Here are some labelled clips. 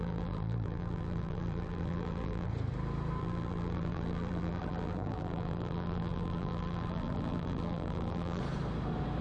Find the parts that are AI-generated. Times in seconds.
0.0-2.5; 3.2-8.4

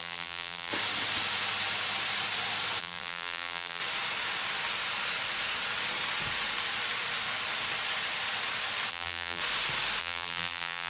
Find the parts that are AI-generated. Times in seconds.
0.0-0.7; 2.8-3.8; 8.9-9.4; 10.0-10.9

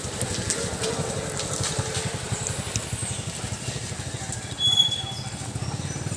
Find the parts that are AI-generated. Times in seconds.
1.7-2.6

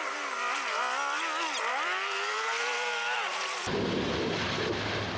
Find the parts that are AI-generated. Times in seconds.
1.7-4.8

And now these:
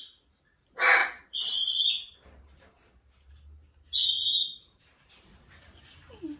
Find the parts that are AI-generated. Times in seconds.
1.0-3.3; 4.3-5.8

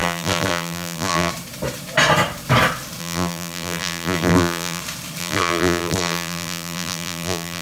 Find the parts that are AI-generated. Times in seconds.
0.0-1.3; 3.0-4.8; 5.2-7.6

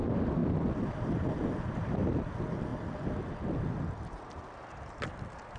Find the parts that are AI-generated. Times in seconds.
0.4-2.3; 2.7-5.0